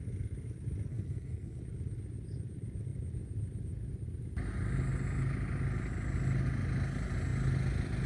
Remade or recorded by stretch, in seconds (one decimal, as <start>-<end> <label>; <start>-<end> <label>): 0.0-0.9 recorded; 0.9-1.6 remade; 1.6-8.1 recorded